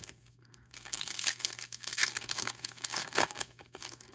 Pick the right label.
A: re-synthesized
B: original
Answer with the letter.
A